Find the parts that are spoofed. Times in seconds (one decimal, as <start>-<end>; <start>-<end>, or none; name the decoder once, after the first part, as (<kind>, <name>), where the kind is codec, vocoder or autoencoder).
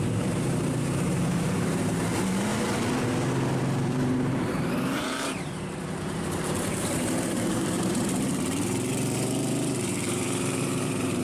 0.0-2.5 (vocoder, BigVGAN v2); 3.6-11.2